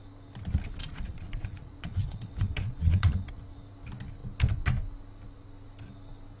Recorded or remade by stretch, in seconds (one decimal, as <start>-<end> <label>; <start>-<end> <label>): 0.0-0.8 recorded; 0.8-3.3 remade; 3.3-6.4 recorded